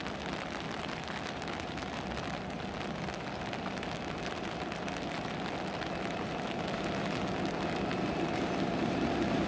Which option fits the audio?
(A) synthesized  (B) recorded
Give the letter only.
B